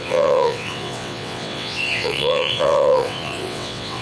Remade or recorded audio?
remade